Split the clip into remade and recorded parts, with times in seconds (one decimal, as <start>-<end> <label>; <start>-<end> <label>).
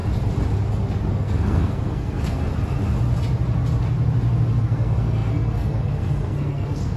0.0-1.1 recorded; 1.1-2.5 remade; 2.5-4.6 recorded; 4.6-7.0 remade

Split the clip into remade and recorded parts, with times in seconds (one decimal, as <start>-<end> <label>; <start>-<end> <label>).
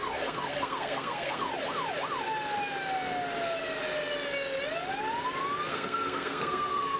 0.0-1.5 remade; 1.5-5.7 recorded; 5.7-7.0 remade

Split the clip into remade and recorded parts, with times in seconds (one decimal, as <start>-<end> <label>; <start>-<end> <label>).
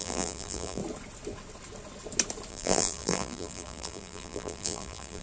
0.0-0.8 remade; 0.8-2.5 recorded; 2.5-5.2 remade